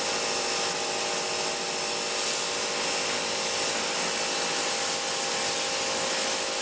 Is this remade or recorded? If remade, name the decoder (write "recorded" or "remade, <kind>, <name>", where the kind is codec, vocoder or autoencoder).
recorded